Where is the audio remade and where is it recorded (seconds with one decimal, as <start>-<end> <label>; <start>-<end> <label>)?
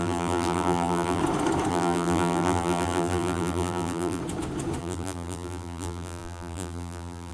0.0-1.2 remade; 1.2-1.7 recorded; 1.7-4.2 remade; 4.2-4.8 recorded; 4.8-7.3 remade